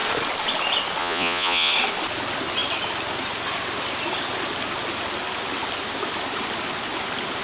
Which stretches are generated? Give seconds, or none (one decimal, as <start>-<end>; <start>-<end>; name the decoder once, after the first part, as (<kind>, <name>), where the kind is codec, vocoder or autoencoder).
1.0-1.7 (vocoder, Vocos)